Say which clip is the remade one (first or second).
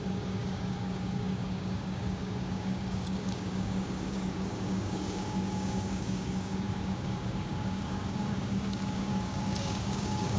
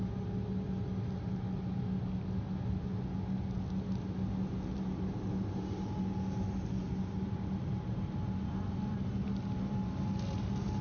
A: first